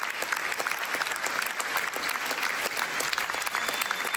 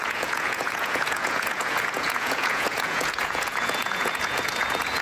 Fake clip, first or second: second